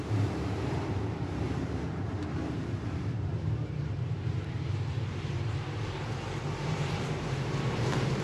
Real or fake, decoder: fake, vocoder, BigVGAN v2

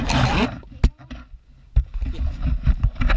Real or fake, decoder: real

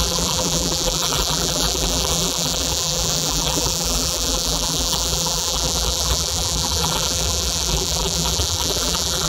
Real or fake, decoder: fake, vocoder, BigVGAN v2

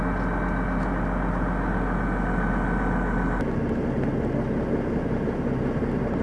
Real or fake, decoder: real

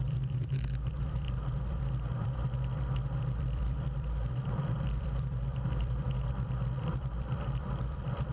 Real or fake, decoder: fake, vocoder, BigVGAN v2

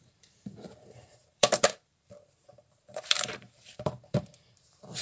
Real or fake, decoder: fake, vocoder, BigVGAN v2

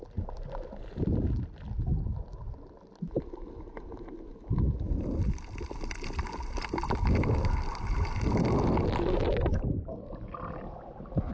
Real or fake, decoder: fake, vocoder, BigVGAN v2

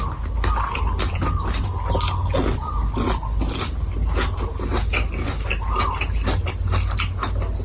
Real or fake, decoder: real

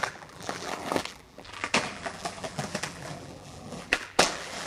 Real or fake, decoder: fake, vocoder, BigVGAN v2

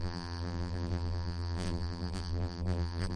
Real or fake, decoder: fake, vocoder, BigVGAN v2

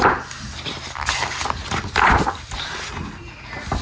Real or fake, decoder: fake, vocoder, BigVGAN v2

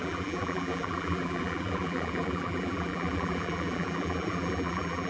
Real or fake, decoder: fake, vocoder, BigVGAN v2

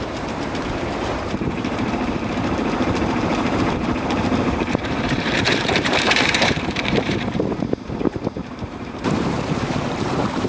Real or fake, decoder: fake, vocoder, BigVGAN v2